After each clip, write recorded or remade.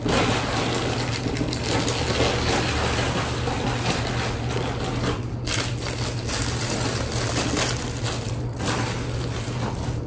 recorded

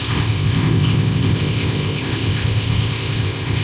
remade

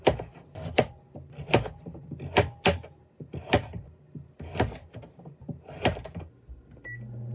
recorded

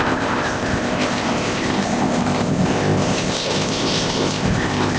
remade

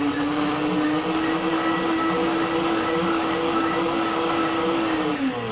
recorded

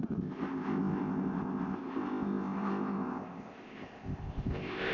remade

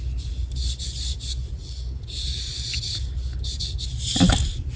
recorded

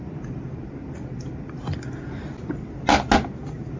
recorded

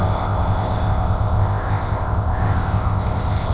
remade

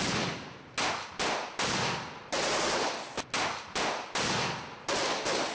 recorded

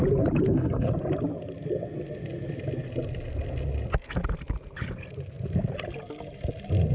recorded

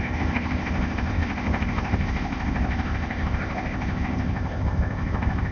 remade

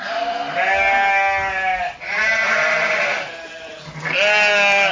recorded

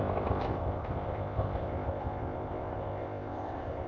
remade